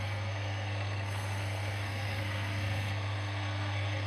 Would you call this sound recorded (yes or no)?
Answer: no